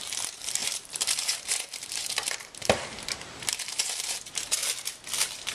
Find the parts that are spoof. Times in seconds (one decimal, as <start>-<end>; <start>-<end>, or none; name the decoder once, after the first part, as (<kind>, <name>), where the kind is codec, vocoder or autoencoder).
0.0-4.6 (vocoder, BigVGAN v2)